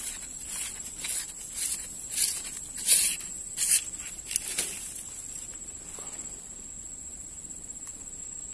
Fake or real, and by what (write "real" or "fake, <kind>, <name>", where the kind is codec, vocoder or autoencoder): real